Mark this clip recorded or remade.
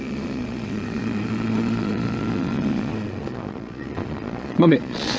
remade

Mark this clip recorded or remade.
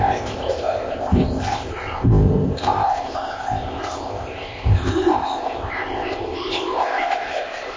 remade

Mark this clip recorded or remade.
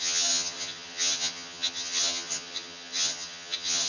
remade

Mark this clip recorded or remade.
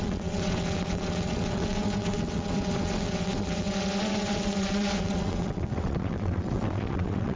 remade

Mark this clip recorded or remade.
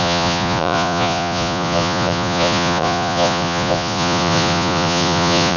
remade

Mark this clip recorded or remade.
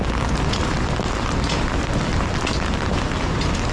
recorded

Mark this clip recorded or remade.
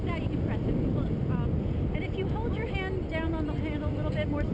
recorded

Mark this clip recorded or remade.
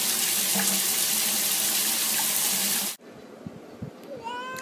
recorded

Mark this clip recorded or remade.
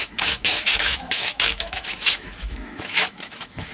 remade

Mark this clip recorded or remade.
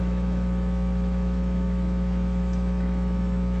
remade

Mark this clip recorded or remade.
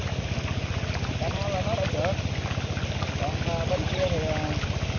recorded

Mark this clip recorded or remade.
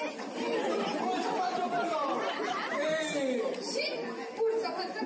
recorded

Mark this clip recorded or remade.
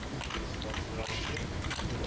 recorded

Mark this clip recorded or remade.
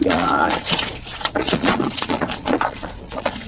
remade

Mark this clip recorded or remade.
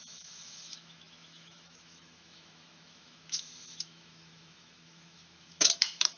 remade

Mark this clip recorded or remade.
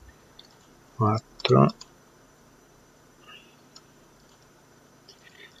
remade